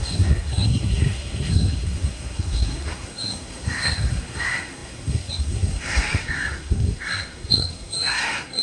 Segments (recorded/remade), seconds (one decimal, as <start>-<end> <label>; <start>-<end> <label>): 0.0-8.6 remade